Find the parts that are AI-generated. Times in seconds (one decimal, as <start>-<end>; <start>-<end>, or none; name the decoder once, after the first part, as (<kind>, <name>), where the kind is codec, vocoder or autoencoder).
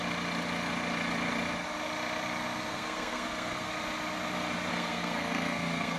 2.7-3.7 (codec, SNAC); 4.7-6.0